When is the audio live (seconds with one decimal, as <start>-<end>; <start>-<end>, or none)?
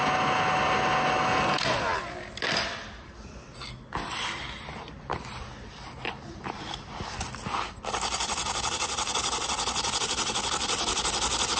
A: 0.0-11.6